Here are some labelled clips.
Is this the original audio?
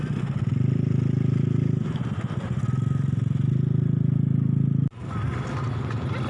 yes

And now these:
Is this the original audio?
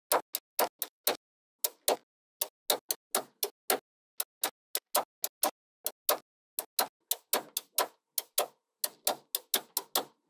yes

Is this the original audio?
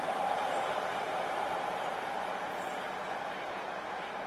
yes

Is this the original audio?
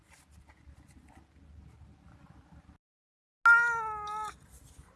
yes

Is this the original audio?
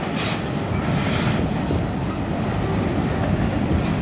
yes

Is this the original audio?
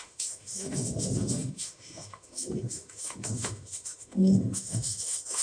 no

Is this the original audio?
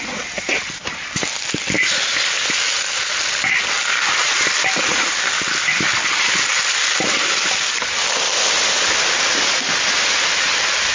yes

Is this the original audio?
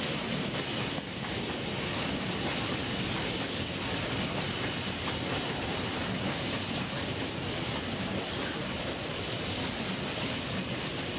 yes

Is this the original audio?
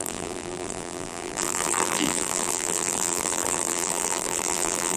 no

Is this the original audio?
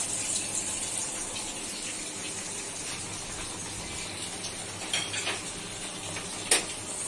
yes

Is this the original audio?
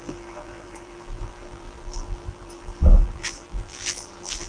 no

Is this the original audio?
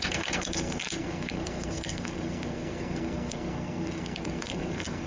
no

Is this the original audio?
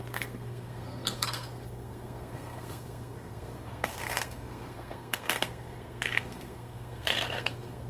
no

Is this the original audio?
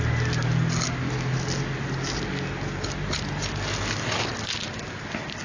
yes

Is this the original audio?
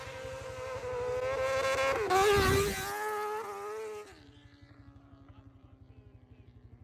yes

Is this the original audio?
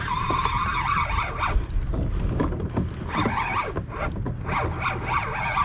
yes